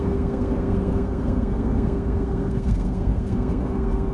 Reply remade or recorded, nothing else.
remade